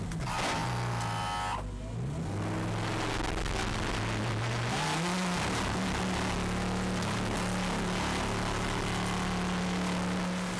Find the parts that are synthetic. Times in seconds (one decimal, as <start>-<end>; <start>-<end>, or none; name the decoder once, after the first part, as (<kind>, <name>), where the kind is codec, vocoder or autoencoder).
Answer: none